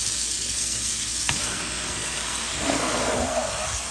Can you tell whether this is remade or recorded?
remade